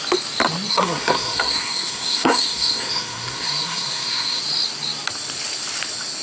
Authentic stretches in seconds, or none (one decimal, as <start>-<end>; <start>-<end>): 0.0-0.7; 4.4-6.2